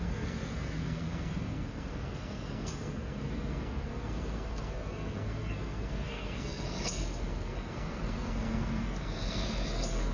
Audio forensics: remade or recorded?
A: remade